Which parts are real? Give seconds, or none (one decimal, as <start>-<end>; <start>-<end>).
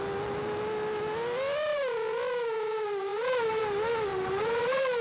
0.0-1.7; 2.3-4.1